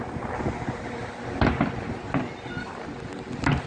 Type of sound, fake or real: real